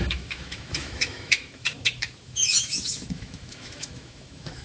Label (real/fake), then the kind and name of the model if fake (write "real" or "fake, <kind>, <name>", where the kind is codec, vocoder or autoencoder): fake, autoencoder, DAC-VAE